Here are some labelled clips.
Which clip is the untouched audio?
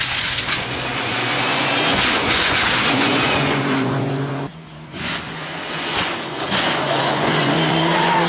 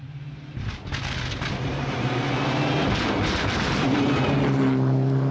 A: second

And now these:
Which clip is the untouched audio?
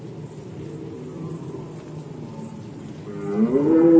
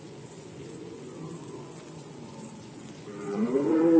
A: first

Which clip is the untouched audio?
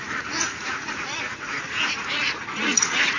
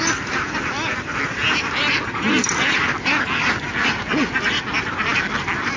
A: second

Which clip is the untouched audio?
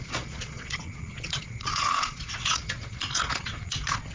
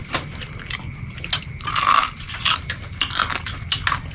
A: second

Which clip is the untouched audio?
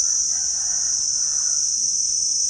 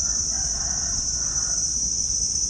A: first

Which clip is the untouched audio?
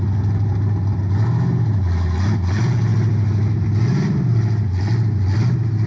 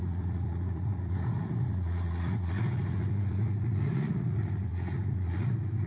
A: first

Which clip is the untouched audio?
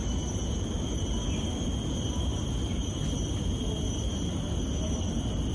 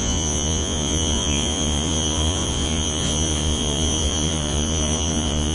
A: first